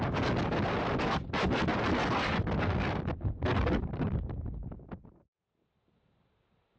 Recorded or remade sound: recorded